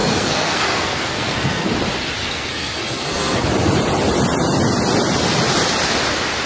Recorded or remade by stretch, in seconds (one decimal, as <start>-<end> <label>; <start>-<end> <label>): 0.0-1.7 remade; 1.7-2.2 recorded; 2.2-3.4 remade; 3.4-6.5 recorded